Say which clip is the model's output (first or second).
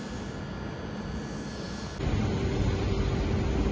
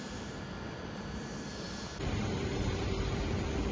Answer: second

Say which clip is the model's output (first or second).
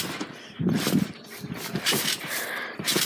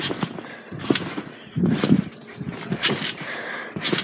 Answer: first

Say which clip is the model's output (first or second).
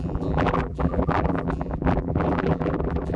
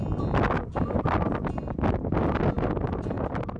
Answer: first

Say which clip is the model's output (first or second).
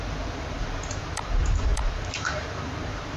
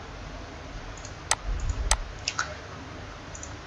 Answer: first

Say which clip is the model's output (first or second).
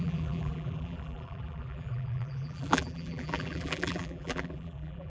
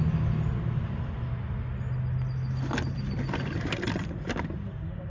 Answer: first